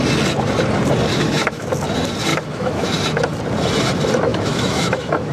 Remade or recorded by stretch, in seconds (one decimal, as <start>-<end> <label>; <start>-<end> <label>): 0.0-1.1 recorded; 1.1-1.7 remade; 1.7-2.3 recorded; 2.3-2.9 remade; 2.9-4.3 recorded; 4.3-5.3 remade